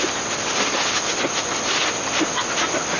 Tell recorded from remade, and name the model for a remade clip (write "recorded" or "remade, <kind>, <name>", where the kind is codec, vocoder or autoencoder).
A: recorded